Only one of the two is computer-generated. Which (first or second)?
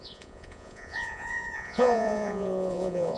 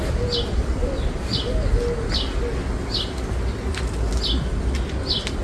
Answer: first